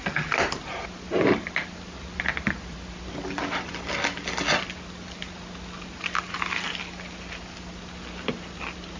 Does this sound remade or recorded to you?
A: recorded